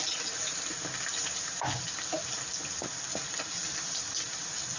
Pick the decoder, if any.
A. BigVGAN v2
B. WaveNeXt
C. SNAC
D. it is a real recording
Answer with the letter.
D